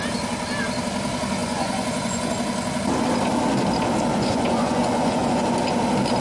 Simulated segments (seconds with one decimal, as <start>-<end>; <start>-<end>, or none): 1.4-2.3; 4.1-5.4